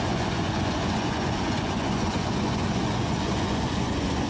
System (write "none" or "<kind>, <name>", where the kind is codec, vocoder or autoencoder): vocoder, Vocos